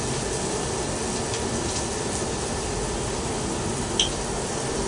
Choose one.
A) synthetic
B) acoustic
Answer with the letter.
B